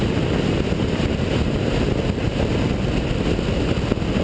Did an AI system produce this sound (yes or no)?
no